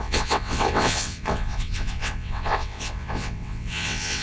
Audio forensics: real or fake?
fake